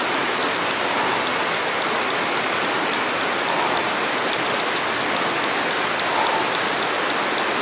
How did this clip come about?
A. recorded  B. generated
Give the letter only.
A